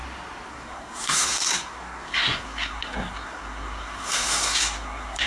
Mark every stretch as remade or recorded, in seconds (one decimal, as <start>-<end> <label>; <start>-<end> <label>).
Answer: 0.0-0.5 recorded; 0.5-5.3 remade

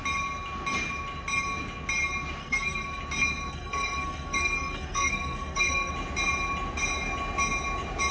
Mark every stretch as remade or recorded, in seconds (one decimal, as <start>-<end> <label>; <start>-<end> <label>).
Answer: 0.0-2.4 recorded; 2.4-3.0 remade; 3.0-3.5 recorded; 3.5-5.9 remade; 5.9-8.1 recorded

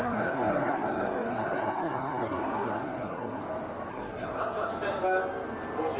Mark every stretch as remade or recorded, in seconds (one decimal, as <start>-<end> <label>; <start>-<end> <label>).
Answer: 0.0-3.4 remade; 3.4-3.9 recorded; 3.9-4.7 remade; 4.7-6.0 recorded

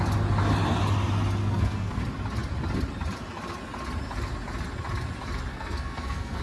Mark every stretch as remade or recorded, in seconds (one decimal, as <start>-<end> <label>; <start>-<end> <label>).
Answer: 0.0-1.4 recorded; 1.4-2.0 remade; 2.0-5.5 recorded; 5.5-6.4 remade

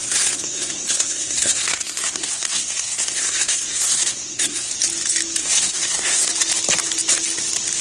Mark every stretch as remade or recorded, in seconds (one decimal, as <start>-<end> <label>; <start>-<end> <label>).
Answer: 0.0-4.7 remade; 4.7-5.4 recorded; 5.4-6.3 remade; 6.3-7.8 recorded

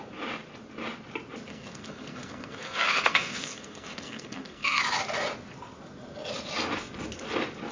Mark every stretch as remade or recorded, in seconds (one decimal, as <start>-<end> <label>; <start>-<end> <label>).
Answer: 0.0-1.5 recorded; 1.5-4.8 remade; 4.8-7.7 recorded

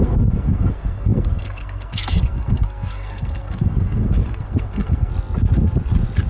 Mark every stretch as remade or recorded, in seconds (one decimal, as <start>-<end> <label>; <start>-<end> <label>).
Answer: 0.0-5.1 remade; 5.1-6.3 recorded